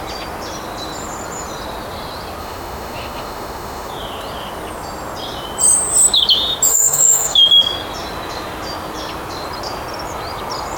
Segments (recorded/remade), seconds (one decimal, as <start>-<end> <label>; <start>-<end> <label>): 0.0-2.4 recorded; 2.4-3.9 remade; 3.9-6.7 recorded; 6.7-7.4 remade; 7.4-10.8 recorded